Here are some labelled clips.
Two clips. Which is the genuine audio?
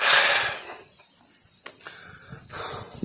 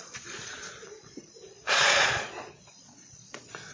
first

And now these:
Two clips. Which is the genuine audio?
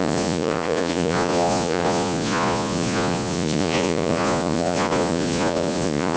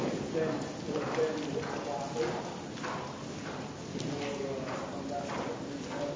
second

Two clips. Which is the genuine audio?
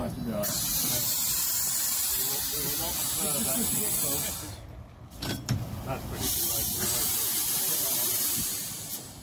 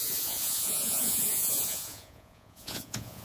first